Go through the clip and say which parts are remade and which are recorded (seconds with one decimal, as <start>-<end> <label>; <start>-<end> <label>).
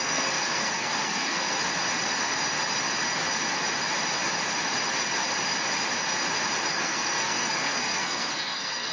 0.0-1.6 remade; 1.6-6.7 recorded; 6.7-8.9 remade